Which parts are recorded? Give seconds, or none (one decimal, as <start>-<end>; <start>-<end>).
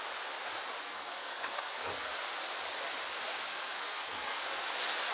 0.0-0.8; 2.1-3.5; 4.4-5.1